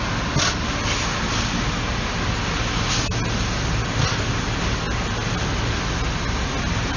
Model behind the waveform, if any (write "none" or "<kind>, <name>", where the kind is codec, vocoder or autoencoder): none